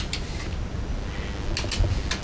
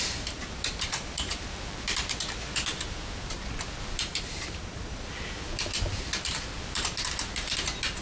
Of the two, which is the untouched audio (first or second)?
first